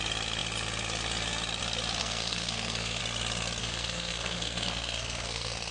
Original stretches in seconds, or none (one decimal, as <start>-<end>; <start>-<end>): 0.0-2.0; 3.0-3.6